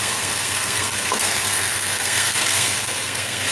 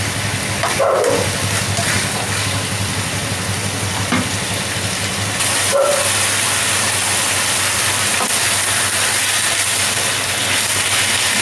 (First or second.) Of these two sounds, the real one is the second